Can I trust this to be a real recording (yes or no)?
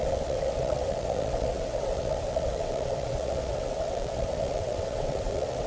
no